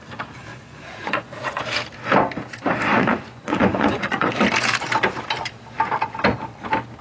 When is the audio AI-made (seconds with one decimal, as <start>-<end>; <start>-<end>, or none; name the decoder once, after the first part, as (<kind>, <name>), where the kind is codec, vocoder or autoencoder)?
0.5-1.6 (vocoder, Vocos); 2.9-4.3